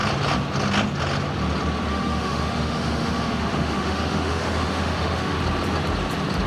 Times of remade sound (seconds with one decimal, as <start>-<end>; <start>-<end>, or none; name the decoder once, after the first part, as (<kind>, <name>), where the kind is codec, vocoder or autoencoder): 1.9-5.4 (autoencoder, DAC-VAE)